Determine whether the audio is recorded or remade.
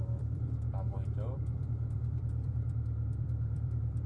remade